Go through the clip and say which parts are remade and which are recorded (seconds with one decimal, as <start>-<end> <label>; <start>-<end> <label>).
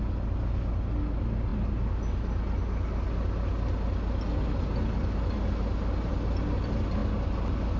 0.0-7.8 recorded